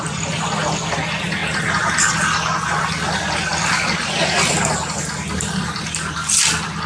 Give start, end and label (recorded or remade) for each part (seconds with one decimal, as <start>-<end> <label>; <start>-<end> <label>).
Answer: 0.0-6.9 recorded